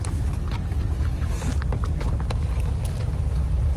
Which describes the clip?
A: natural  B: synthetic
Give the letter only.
A